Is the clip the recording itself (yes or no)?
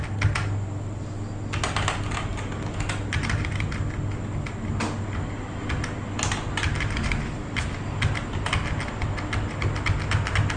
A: yes